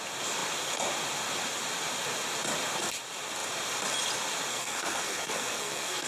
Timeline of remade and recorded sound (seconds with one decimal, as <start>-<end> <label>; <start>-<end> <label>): 0.0-4.5 recorded; 4.5-6.1 remade